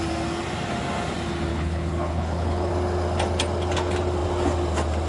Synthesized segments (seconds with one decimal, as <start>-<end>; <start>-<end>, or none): 1.5-2.7